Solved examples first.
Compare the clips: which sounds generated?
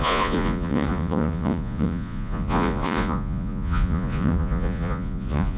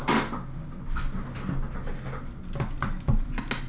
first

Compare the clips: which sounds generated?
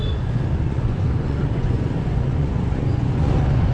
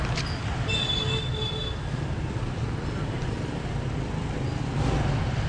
first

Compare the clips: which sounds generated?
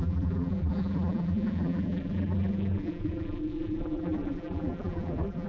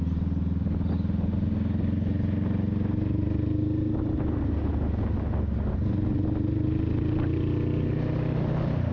first